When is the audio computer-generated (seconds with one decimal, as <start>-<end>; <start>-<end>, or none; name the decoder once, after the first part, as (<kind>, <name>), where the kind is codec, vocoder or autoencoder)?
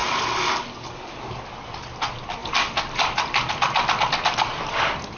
2.4-3.5 (vocoder, BigVGAN v2)